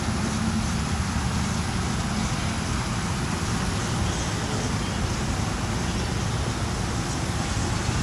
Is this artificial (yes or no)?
no